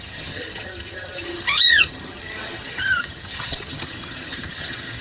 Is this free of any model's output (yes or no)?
no